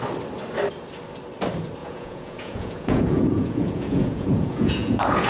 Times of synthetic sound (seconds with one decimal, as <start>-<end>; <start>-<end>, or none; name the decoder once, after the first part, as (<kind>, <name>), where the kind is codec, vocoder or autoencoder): 1.8-5.3 (vocoder, Vocos)